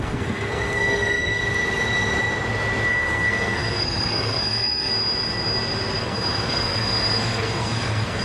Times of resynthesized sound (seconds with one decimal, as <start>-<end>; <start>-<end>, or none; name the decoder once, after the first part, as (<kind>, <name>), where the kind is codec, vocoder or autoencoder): 0.0-1.4 (codec, SNAC); 2.9-4.9; 6.0-8.2